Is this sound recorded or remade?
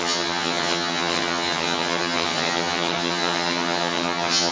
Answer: remade